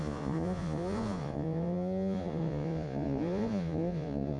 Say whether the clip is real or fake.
fake